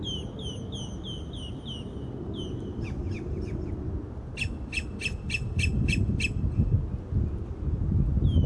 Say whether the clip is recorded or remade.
recorded